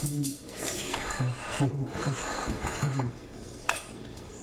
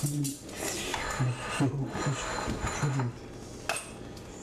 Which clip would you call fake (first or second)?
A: first